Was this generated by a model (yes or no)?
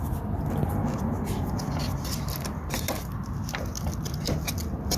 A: no